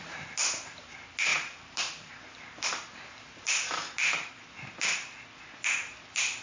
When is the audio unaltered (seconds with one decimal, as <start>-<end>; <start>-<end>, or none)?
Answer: 0.0-1.3; 4.3-6.4